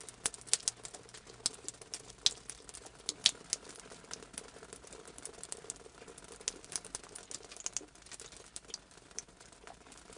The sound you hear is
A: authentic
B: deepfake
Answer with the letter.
A